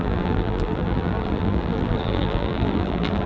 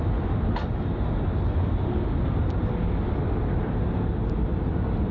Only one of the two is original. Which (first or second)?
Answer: second